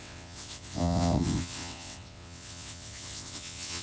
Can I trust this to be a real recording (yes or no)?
no